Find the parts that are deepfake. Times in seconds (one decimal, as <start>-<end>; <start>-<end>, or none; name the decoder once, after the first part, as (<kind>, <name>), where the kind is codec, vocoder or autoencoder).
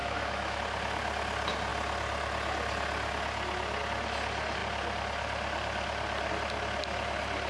0.0-0.6 (autoencoder, DAC-VAE)